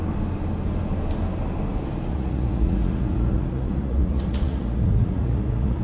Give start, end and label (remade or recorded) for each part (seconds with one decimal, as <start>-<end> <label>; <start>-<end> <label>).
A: 0.0-2.1 recorded; 2.1-5.8 remade

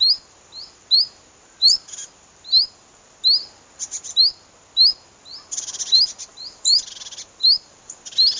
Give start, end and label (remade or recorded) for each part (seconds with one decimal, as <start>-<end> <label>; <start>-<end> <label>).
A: 0.0-8.4 recorded

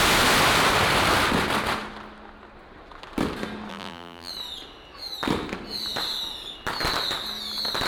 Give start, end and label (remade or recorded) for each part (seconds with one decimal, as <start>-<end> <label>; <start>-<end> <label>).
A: 0.0-3.7 recorded; 3.7-4.3 remade; 4.3-7.9 recorded

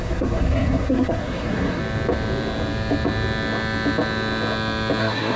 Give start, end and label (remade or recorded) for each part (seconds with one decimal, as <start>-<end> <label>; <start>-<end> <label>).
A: 0.0-1.8 remade; 1.8-5.0 recorded; 5.0-5.4 remade

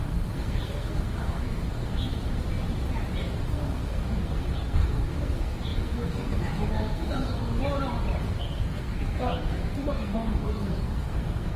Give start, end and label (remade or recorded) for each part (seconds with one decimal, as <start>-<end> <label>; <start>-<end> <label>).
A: 0.0-2.4 remade; 2.4-3.2 recorded; 3.2-7.6 remade; 7.6-8.2 recorded; 8.2-11.6 remade

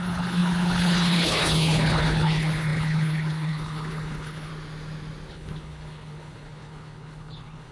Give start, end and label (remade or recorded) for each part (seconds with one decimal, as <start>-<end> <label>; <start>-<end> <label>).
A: 0.0-4.5 remade; 4.5-5.3 recorded; 5.3-7.7 remade